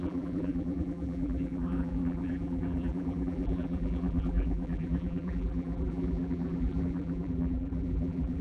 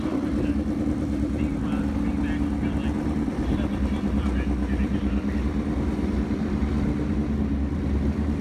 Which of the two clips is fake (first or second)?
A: first